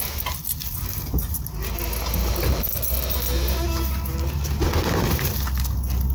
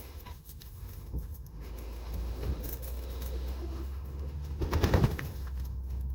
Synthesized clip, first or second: second